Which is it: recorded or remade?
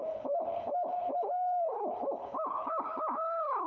remade